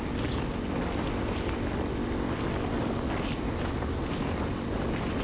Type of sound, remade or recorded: recorded